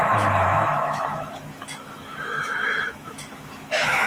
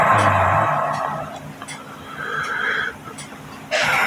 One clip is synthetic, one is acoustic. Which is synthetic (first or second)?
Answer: first